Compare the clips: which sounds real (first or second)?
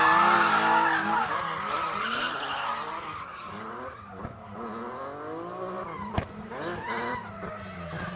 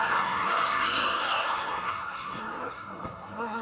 first